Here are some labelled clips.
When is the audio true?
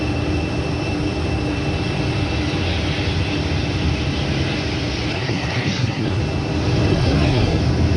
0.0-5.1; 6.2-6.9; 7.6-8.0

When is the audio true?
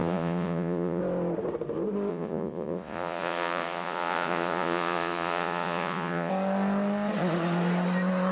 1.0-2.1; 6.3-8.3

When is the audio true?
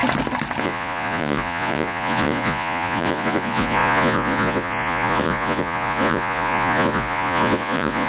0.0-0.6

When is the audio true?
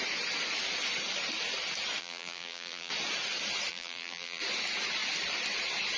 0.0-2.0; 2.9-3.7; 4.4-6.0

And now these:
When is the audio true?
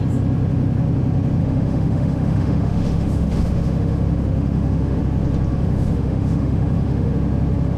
0.0-1.4; 5.0-5.5; 7.1-7.8